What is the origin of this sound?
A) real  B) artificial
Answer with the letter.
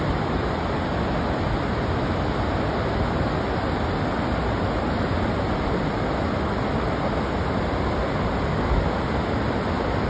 A